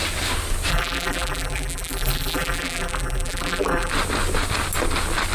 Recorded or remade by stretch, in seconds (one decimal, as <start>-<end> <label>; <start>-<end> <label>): 0.0-0.7 recorded; 0.7-3.9 remade; 3.9-5.3 recorded